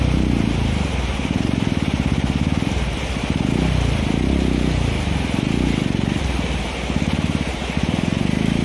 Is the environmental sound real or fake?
real